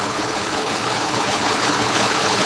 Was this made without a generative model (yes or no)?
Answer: no